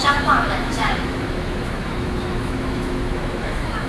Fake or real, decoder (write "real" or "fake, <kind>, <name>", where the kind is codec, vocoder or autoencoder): fake, autoencoder, DAC-VAE